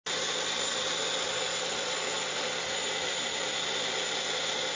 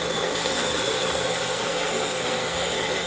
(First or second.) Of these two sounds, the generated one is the second